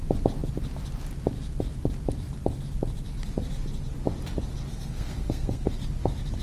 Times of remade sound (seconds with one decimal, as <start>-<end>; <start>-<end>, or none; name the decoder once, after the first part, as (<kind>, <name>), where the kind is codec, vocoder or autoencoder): 4.7-5.7 (codec, SNAC)